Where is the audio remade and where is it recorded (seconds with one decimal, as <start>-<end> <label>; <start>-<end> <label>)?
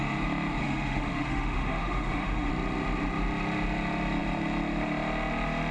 0.0-0.6 recorded; 0.6-2.5 remade; 2.5-5.7 recorded